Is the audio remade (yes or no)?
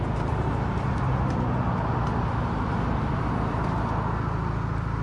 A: no